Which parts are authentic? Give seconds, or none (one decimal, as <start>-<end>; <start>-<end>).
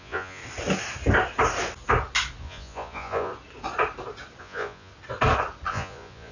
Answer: 0.4-2.4; 3.3-4.4; 4.9-5.7